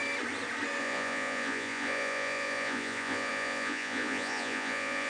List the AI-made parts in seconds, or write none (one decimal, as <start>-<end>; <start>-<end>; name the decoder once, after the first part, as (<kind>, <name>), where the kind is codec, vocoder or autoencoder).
0.8-5.1 (vocoder, Vocos)